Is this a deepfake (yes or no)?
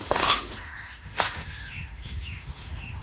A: yes